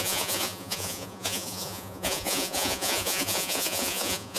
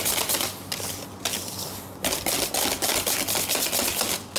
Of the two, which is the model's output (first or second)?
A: first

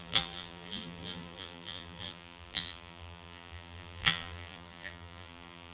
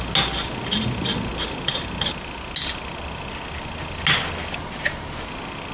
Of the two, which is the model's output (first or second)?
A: first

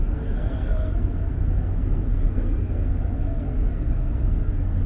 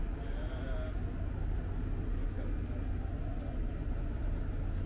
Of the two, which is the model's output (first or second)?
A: first